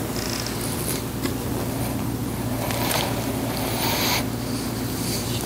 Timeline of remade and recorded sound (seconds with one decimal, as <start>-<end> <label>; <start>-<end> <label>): 0.0-2.2 recorded; 2.2-5.5 remade